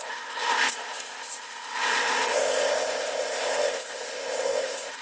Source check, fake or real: fake